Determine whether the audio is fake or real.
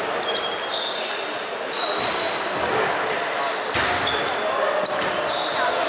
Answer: real